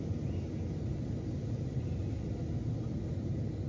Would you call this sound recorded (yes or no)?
yes